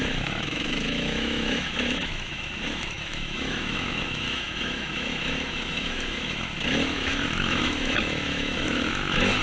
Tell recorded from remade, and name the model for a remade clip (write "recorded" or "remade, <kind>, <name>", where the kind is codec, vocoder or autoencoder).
remade, autoencoder, DAC-VAE